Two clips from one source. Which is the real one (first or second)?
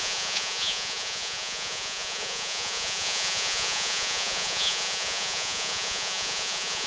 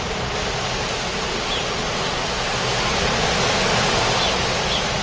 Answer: second